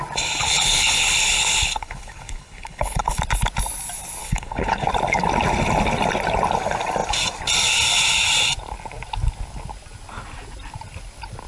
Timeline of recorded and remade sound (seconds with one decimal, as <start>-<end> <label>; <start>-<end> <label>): 0.0-0.4 recorded; 0.4-3.2 remade; 3.2-4.2 recorded; 4.2-4.9 remade; 4.9-11.5 recorded